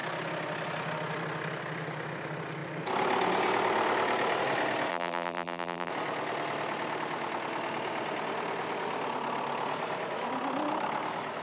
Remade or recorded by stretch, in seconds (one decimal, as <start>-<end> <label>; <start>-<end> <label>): 0.0-4.9 recorded; 4.9-5.9 remade; 5.9-11.4 recorded

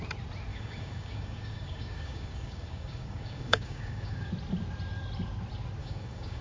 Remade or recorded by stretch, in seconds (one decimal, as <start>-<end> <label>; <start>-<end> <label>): 0.0-0.5 recorded; 0.5-4.3 remade; 4.3-5.8 recorded; 5.8-6.4 remade

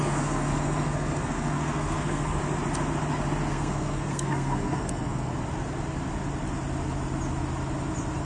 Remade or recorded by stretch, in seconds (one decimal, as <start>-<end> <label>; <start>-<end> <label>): 0.0-2.4 remade; 2.4-3.5 recorded; 3.5-5.3 remade; 5.3-8.2 recorded

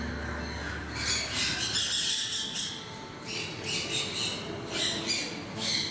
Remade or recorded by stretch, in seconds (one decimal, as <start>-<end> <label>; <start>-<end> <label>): 0.0-5.9 recorded